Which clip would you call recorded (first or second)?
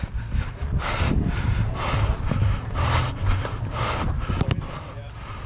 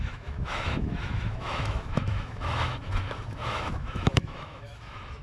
first